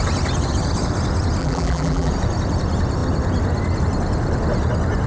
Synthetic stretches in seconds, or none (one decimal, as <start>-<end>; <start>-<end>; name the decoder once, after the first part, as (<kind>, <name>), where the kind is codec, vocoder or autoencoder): 1.4-2.1 (vocoder, BigVGAN v2)